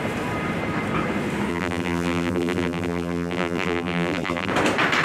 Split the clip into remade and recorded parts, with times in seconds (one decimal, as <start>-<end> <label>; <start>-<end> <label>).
0.0-1.5 recorded; 1.5-4.5 remade; 4.5-5.0 recorded